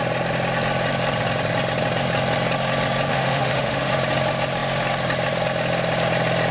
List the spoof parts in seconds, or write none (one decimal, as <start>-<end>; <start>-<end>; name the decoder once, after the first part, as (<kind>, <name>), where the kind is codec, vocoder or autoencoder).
3.1-3.9 (autoencoder, DAC-VAE)